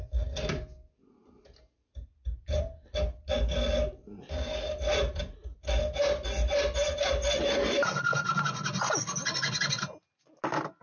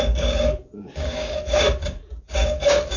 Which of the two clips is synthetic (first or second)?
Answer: second